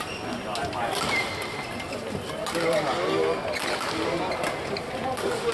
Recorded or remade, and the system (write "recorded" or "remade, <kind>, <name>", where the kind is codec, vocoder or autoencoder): recorded